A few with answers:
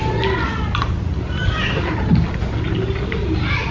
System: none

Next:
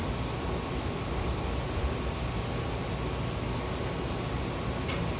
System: none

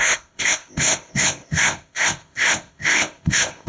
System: codec, ZipCodec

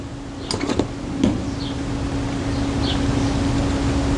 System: none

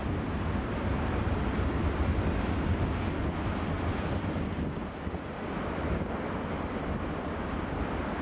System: none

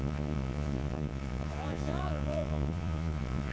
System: vocoder, Vocos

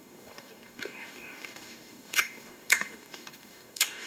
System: codec, DAC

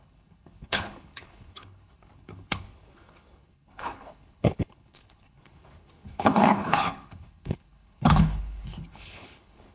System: codec, HILCodec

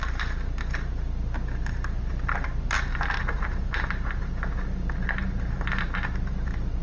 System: none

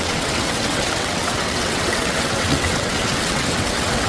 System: vocoder, WaveNeXt